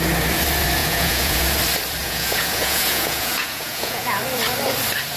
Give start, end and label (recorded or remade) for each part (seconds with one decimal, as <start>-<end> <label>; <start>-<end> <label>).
0.0-0.8 recorded; 0.8-1.4 remade; 1.4-2.0 recorded; 2.0-4.2 remade; 4.2-5.2 recorded